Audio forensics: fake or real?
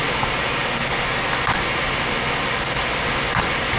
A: real